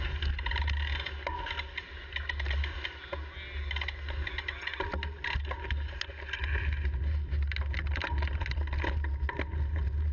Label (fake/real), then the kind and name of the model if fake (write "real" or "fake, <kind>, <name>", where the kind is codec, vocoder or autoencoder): real